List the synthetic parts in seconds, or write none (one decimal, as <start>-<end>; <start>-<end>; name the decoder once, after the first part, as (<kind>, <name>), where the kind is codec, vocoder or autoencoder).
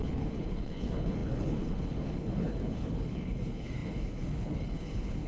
0.0-5.3 (codec, HILCodec)